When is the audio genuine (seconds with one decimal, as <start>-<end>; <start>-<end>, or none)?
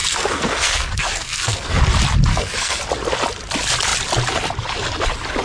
1.8-2.3; 2.8-5.4